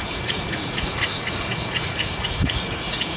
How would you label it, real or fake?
fake